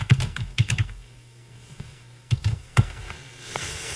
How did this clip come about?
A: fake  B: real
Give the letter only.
A